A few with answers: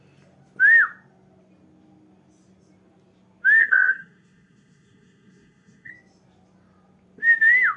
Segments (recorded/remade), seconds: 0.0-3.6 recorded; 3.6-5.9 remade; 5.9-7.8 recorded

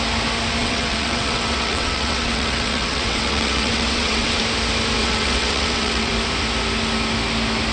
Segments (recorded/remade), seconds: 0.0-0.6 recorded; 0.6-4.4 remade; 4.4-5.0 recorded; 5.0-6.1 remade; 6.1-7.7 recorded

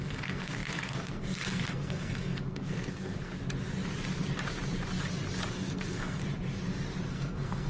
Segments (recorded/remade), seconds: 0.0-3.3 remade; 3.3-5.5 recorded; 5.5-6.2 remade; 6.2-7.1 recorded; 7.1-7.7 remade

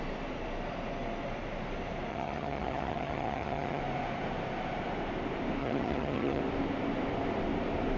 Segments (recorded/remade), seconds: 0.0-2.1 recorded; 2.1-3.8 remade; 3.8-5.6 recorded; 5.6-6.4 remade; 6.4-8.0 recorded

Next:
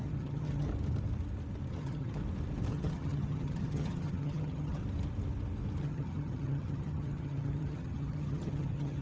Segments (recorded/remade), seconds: 0.0-0.7 remade; 0.7-1.7 recorded; 1.7-2.2 remade; 2.2-2.7 recorded; 2.7-4.8 remade; 4.8-5.8 recorded; 5.8-9.0 remade

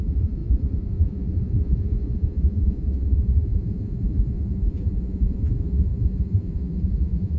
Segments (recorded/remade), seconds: 0.0-7.4 remade

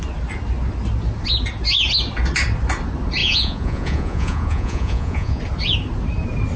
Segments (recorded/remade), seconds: 0.0-3.2 recorded; 3.2-5.4 remade; 5.4-6.6 recorded

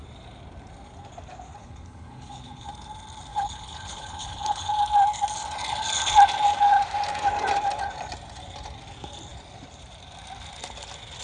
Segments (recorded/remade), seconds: 0.0-1.6 recorded; 1.6-2.7 remade; 2.7-3.3 recorded; 3.3-4.7 remade; 4.7-11.2 recorded